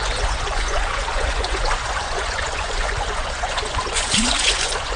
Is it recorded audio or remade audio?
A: remade